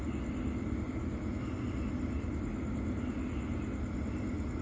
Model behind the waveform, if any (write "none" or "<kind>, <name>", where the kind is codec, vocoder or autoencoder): none